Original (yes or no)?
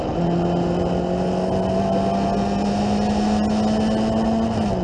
yes